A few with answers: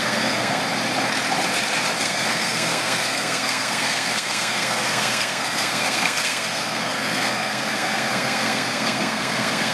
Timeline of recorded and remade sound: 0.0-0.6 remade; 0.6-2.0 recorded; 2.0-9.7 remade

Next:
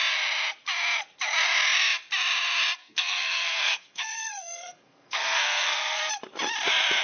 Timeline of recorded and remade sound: 0.0-2.8 recorded; 2.8-6.1 remade; 6.1-7.0 recorded

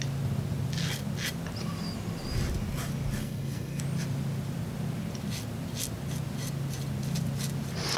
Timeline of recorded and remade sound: 0.0-3.2 recorded; 3.2-3.8 remade; 3.8-8.0 recorded

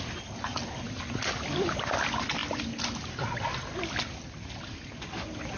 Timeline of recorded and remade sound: 0.0-5.6 recorded

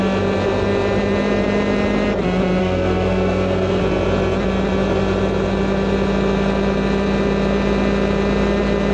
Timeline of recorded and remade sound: 0.0-2.6 recorded; 2.6-3.8 remade; 3.8-8.9 recorded